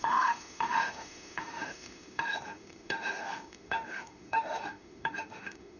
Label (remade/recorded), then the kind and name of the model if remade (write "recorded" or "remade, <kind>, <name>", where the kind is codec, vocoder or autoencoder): remade, autoencoder, DAC-VAE